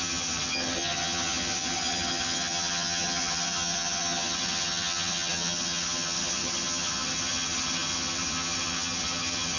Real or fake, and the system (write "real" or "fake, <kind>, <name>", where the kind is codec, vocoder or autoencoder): fake, vocoder, HiFi-GAN